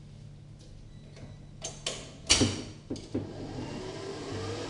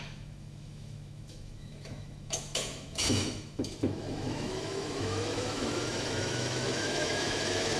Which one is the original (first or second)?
first